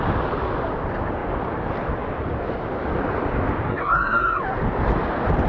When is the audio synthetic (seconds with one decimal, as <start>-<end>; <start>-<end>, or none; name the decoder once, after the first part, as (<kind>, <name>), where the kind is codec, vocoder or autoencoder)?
3.7-4.4 (codec, SNAC)